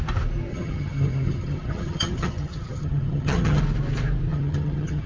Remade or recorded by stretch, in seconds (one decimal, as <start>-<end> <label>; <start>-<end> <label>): 0.0-0.5 recorded; 0.5-3.6 remade; 3.6-4.3 recorded; 4.3-5.1 remade